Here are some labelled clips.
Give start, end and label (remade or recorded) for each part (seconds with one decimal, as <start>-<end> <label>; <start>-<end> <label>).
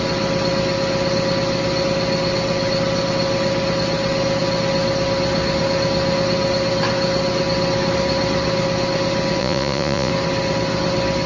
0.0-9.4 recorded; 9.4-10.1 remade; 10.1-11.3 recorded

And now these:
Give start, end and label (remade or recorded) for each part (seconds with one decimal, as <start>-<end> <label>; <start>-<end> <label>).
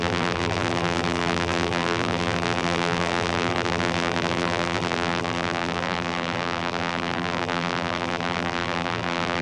0.0-9.4 remade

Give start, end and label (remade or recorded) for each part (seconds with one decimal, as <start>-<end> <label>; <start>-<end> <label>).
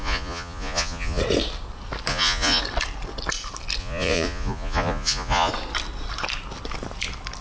0.0-1.2 remade; 1.2-2.1 recorded; 2.1-2.6 remade; 2.6-3.8 recorded; 3.8-5.5 remade; 5.5-7.4 recorded